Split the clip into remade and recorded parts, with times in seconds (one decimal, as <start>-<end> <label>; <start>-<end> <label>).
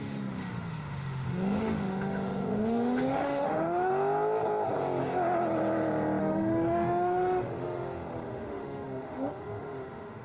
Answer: 0.0-3.9 remade; 3.9-6.2 recorded; 6.2-10.2 remade